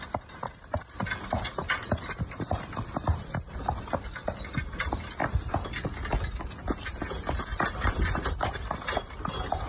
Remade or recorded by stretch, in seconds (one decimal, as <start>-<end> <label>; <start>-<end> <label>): 0.0-1.6 recorded; 1.6-3.9 remade; 3.9-5.2 recorded; 5.2-5.9 remade; 5.9-7.5 recorded; 7.5-8.8 remade; 8.8-9.7 recorded